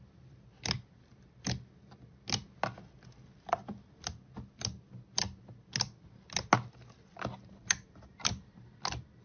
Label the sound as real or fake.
real